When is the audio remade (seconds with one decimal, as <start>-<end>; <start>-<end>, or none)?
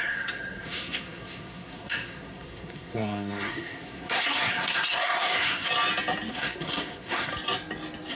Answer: 0.0-5.7; 6.3-7.3